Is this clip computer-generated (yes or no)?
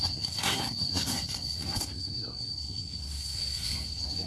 yes